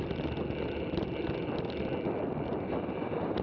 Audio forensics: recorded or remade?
recorded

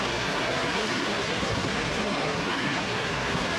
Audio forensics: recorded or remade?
remade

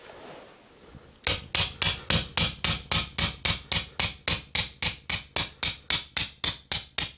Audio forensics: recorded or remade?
recorded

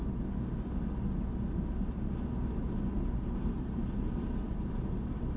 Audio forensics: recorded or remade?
recorded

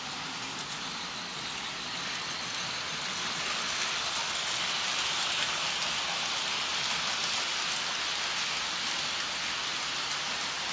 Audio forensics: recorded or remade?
recorded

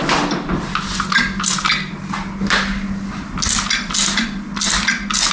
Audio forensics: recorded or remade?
recorded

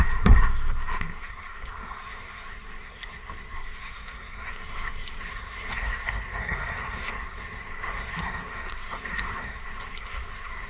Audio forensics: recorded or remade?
remade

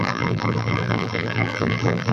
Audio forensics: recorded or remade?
remade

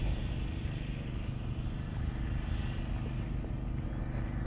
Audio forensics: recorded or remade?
recorded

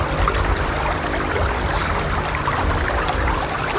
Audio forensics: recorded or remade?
recorded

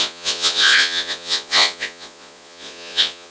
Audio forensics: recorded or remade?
remade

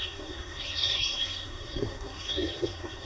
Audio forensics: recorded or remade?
remade